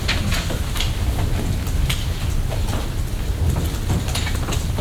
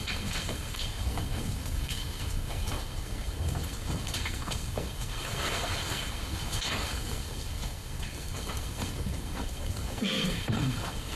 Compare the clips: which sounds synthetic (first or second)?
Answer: second